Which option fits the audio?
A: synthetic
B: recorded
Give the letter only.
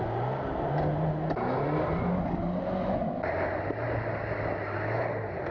B